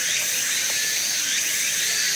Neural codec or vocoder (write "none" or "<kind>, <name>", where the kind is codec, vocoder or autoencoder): none